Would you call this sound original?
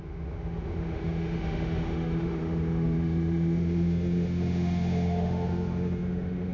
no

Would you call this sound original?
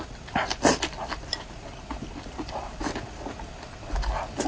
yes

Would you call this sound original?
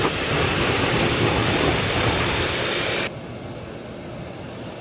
yes